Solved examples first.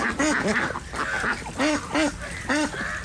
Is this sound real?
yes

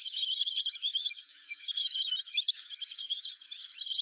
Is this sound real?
no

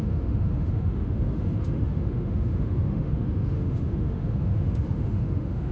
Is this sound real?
no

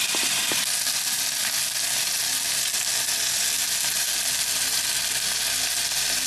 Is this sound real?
yes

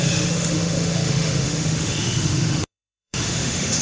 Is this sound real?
no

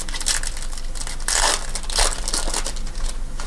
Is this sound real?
yes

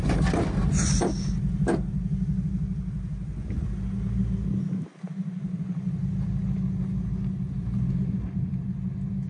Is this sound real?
yes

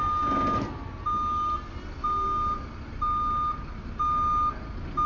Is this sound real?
yes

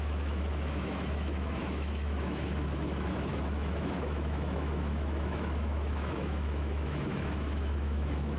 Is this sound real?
no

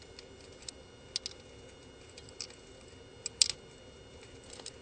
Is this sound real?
yes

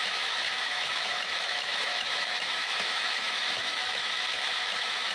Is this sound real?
no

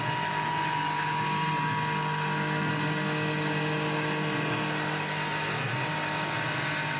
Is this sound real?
yes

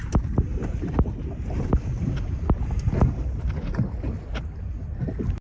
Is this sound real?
yes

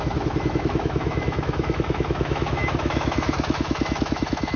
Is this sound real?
no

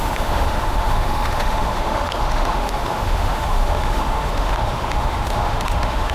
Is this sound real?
no